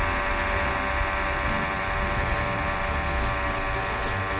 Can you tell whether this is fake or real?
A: real